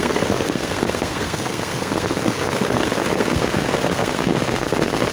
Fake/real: fake